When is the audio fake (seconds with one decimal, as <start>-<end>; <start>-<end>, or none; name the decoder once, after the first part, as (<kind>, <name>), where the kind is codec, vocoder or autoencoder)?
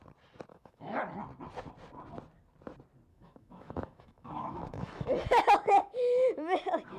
0.5-1.0 (autoencoder, DAC-VAE); 3.1-7.0